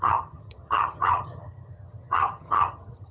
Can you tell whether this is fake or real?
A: fake